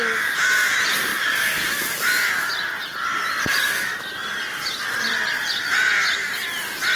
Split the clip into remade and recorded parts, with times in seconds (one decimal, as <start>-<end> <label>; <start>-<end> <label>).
0.0-1.1 recorded; 1.1-1.7 remade; 1.7-7.0 recorded